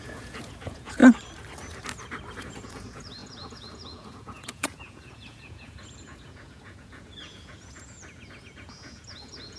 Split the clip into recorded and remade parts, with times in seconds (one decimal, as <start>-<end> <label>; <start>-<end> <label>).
0.0-1.0 remade; 1.0-2.4 recorded; 2.4-9.6 remade